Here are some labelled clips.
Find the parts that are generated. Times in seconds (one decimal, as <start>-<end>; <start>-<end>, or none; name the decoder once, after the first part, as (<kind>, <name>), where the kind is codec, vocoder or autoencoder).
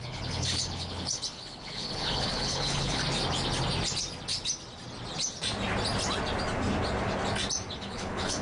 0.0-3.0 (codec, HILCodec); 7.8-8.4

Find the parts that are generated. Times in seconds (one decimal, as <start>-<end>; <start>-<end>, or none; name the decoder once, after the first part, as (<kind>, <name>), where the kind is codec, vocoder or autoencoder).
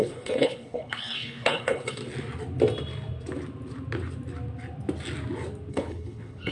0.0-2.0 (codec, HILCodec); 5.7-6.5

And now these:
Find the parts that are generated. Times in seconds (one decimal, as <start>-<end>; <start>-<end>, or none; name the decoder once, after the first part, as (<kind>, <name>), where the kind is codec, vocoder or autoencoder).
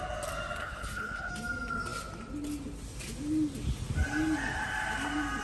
0.6-1.3 (codec, HILCodec)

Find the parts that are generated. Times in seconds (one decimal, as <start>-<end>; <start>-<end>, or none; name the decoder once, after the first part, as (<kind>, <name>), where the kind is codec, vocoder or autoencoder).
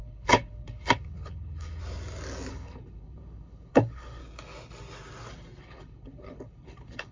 0.0-1.8 (codec, HILCodec); 2.5-4.2; 5.6-7.1